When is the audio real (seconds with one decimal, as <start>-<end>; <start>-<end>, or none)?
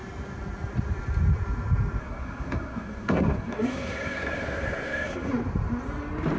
0.0-2.0; 5.3-6.4